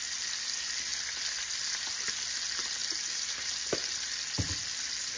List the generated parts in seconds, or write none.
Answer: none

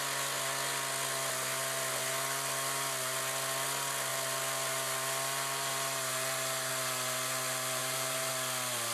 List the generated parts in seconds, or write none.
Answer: 7.8-8.3

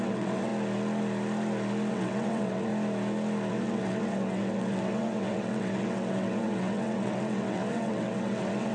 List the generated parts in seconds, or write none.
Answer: 0.0-0.5; 1.9-2.7; 3.5-8.7